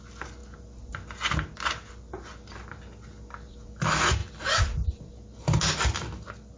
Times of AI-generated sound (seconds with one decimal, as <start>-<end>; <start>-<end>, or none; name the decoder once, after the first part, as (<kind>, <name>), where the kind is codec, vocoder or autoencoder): 4.2-5.1 (vocoder, BigVGAN v2)